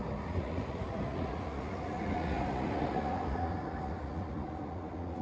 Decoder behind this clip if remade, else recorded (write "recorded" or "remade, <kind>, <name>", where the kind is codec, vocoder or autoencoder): remade, vocoder, Vocos